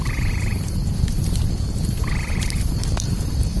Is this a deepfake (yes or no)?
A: yes